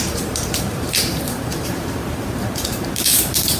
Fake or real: fake